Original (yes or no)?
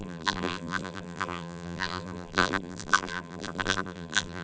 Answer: no